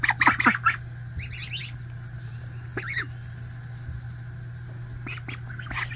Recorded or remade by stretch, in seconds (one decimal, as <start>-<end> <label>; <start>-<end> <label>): 0.0-6.0 recorded